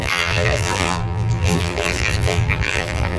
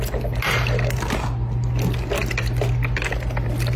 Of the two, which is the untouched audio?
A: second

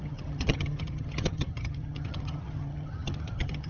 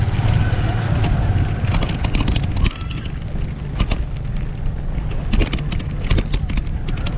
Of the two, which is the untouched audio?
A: second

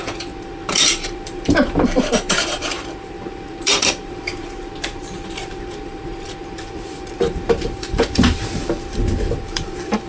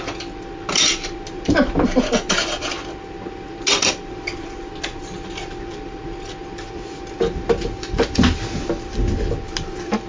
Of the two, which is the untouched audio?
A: second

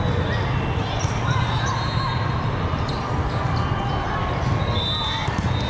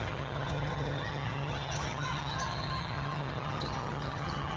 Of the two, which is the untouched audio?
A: first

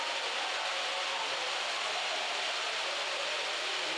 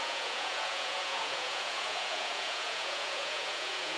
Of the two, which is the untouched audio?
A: first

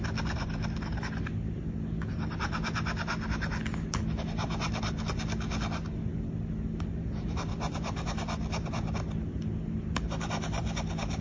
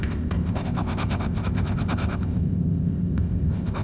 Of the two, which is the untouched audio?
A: first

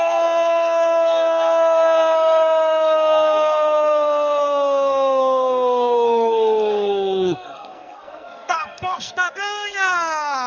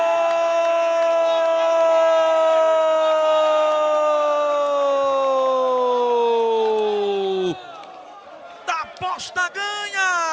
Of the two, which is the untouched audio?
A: second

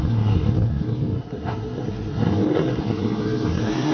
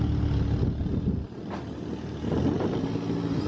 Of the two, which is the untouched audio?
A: second